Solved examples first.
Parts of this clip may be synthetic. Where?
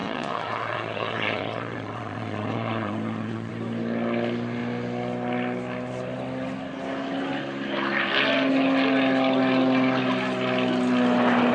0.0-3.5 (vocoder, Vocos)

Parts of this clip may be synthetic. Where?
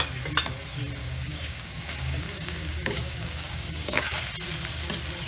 1.0-4.2 (codec, DAC)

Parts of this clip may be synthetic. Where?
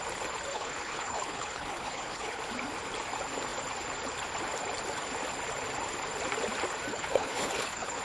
0.5-2.4 (codec, HILCodec); 6.9-8.0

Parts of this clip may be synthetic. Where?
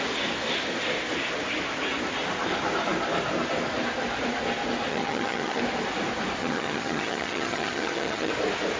4.9-5.6 (vocoder, HiFi-GAN); 6.4-8.3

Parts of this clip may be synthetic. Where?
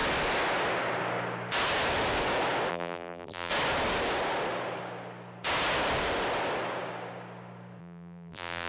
2.7-3.5 (vocoder, BigVGAN v2); 7.8-8.7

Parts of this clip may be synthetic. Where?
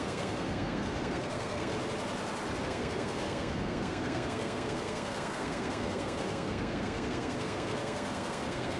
0.0-1.7 (codec, SNAC); 2.6-8.8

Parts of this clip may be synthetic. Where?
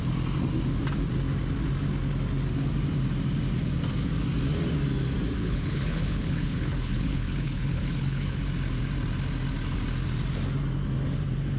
5.4-8.4 (codec, HILCodec)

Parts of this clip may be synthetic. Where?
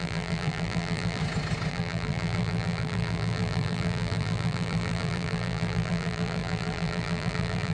0.0-1.2 (vocoder, BigVGAN v2); 1.7-7.7